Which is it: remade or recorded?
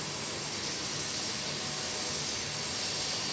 recorded